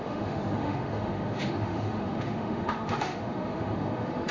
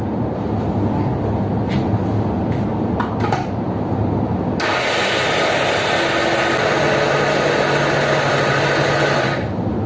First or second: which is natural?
second